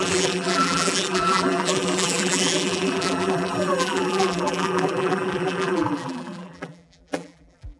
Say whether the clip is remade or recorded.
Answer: remade